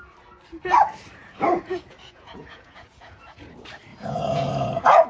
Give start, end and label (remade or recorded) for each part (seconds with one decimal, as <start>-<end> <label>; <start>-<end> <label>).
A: 0.0-1.2 recorded; 1.2-3.5 remade; 3.5-3.9 recorded; 3.9-5.1 remade

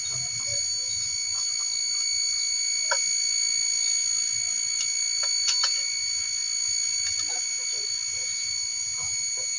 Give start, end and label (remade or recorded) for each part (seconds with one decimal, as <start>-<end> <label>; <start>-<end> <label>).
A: 0.0-9.6 recorded

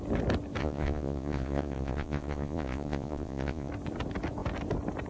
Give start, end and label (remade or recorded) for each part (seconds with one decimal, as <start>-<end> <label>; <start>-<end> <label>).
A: 0.0-0.6 recorded; 0.6-3.7 remade; 3.7-5.1 recorded